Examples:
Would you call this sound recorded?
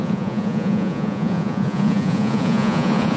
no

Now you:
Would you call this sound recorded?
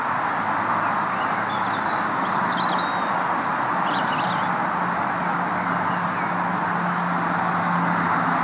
yes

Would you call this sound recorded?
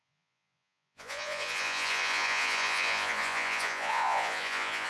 no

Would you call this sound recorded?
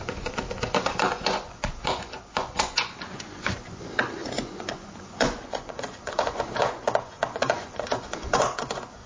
no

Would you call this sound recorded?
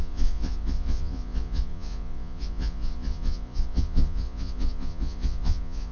no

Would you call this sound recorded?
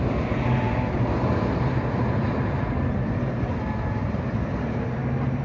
yes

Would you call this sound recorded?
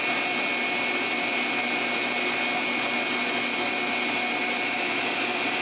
yes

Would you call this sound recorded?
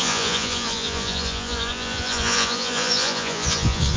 no